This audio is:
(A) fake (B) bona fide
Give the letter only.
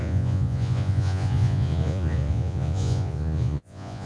A